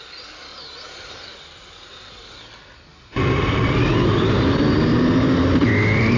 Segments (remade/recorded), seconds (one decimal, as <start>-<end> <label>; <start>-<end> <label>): 0.0-6.2 recorded